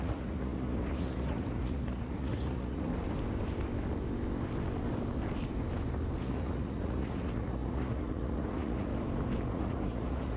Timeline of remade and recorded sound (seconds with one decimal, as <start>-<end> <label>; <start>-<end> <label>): 0.0-2.9 remade; 2.9-6.2 recorded; 6.2-8.9 remade; 8.9-9.5 recorded; 9.5-10.4 remade